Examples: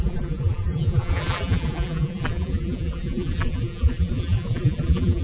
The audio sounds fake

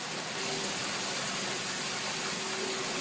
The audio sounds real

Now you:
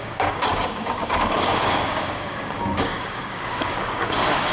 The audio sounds fake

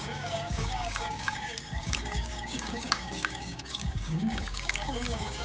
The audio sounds fake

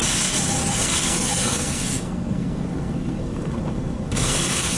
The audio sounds fake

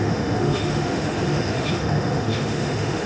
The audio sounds fake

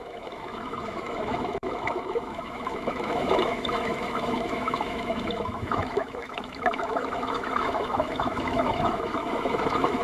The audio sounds fake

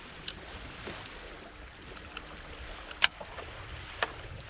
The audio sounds real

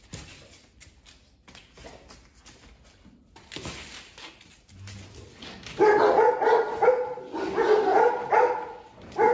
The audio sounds real